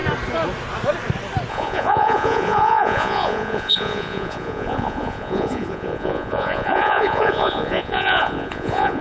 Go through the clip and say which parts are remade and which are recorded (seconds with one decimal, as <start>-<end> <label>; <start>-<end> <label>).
0.0-1.5 recorded; 1.5-9.0 remade